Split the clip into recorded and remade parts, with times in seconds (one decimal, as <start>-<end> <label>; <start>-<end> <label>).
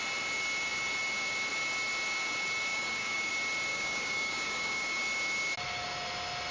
0.0-2.7 recorded; 2.7-3.3 remade; 3.3-3.7 recorded; 3.7-5.0 remade; 5.0-6.5 recorded